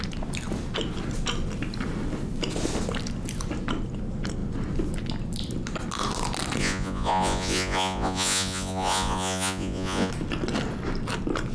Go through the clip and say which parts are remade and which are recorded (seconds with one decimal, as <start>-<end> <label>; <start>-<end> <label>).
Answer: 0.0-6.6 recorded; 6.6-10.1 remade; 10.1-11.5 recorded